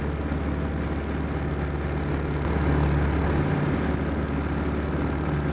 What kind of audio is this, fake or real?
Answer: real